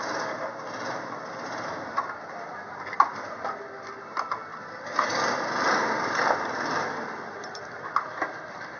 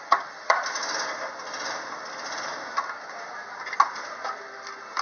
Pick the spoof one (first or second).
first